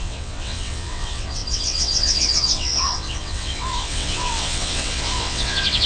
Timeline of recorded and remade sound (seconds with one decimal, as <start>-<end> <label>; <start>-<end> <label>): 0.0-5.9 remade